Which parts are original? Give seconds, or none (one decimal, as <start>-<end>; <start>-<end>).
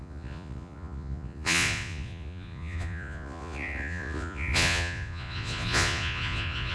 none